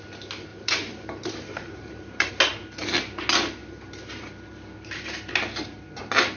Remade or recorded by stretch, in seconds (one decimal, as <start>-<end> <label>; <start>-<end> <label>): 0.0-0.5 recorded; 0.5-2.3 remade; 2.3-6.4 recorded